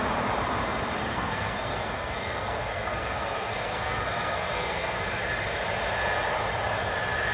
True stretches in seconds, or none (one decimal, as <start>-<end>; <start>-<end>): 0.0-1.0; 5.0-7.3